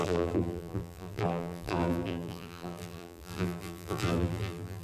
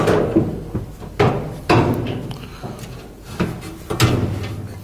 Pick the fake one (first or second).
first